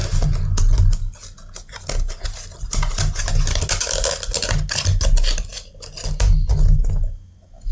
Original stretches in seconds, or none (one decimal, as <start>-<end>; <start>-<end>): 0.0-7.7